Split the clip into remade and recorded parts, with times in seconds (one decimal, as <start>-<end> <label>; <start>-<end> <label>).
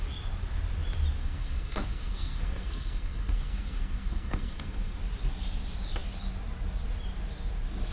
0.0-1.2 recorded; 1.2-5.0 remade; 5.0-7.9 recorded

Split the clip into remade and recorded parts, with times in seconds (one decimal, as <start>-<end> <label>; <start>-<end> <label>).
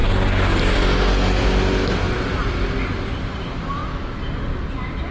0.0-5.1 recorded